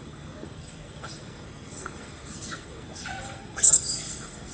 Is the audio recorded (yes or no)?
no